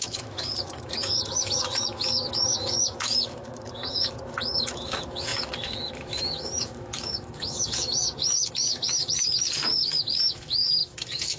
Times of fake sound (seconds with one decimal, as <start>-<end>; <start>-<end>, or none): 0.0-11.4